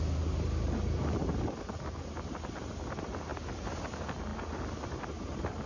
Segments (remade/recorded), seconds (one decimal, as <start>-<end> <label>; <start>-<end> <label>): 0.0-5.7 recorded